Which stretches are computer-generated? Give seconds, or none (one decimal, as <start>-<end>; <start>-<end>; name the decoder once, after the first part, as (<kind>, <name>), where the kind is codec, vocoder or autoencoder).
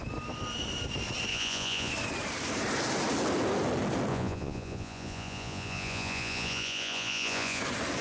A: 1.3-1.9 (vocoder, Vocos); 4.1-7.6